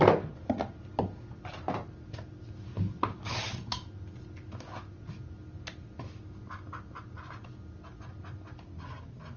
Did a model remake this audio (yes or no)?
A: no